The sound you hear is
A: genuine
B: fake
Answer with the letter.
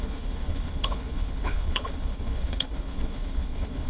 B